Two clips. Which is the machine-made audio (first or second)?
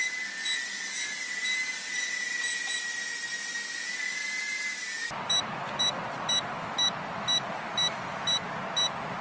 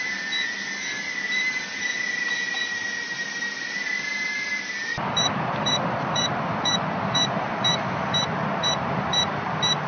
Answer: second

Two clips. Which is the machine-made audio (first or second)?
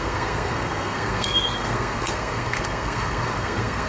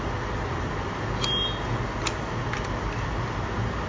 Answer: first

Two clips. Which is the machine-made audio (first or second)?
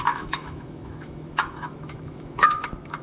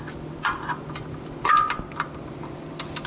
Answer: first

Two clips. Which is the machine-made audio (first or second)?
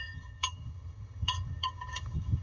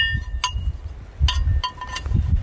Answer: first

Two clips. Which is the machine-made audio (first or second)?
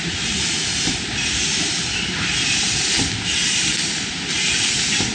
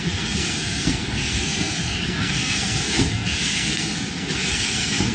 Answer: second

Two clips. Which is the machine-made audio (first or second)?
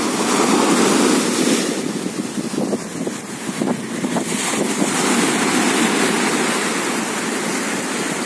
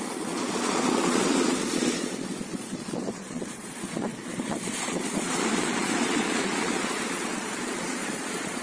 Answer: second